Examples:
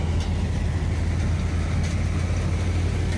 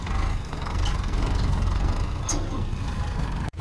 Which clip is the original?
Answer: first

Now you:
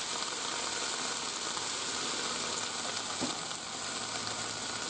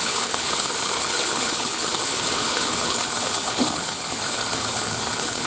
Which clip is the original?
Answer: first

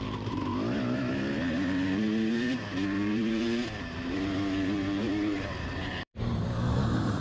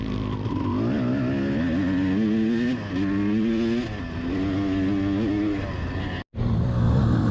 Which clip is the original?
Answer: second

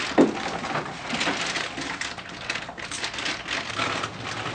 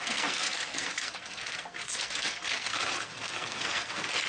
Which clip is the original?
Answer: first